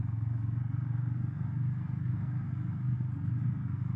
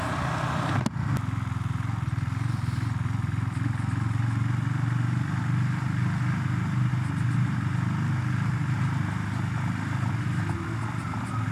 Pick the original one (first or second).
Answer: second